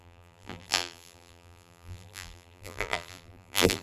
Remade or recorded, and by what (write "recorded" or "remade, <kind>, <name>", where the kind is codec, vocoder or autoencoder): remade, vocoder, BigVGAN v2